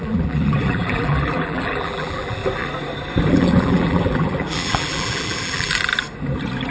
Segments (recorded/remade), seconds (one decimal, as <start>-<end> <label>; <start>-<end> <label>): 0.0-2.4 remade; 2.4-3.3 recorded; 3.3-5.9 remade; 5.9-6.7 recorded